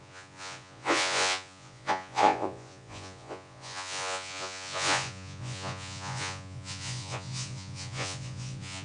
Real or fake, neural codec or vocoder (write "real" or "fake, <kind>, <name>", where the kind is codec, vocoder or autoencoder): fake, vocoder, Vocos